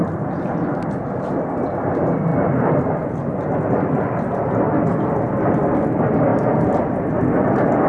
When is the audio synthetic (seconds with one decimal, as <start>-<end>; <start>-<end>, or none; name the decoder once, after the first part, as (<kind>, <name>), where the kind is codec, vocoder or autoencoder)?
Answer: none